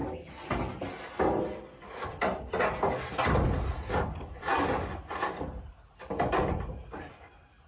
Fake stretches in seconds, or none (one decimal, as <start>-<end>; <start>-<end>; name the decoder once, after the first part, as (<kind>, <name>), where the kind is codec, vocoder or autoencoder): none